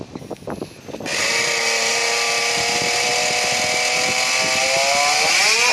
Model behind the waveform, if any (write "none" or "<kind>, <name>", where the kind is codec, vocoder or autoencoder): none